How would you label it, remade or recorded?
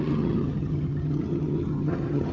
remade